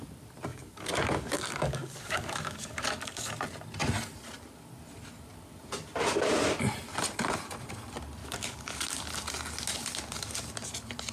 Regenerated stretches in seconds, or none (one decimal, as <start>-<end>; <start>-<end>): 0.5-3.3; 8.2-8.9